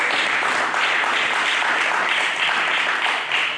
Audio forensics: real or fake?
real